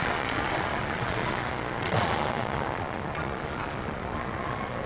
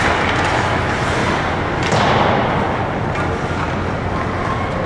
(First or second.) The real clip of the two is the second